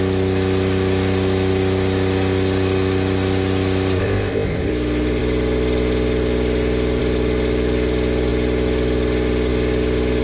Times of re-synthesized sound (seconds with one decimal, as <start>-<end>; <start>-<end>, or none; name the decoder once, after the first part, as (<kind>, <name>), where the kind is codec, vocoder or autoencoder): 4.0-4.7 (codec, ZipCodec)